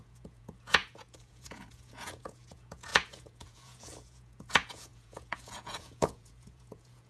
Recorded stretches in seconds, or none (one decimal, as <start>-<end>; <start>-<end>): none

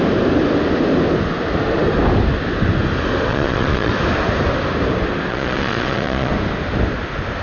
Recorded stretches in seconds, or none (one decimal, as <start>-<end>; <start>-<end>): 0.0-3.3; 3.9-5.3; 6.3-7.4